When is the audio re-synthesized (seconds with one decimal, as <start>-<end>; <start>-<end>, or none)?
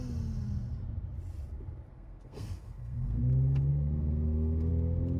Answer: 1.9-3.2; 3.7-4.7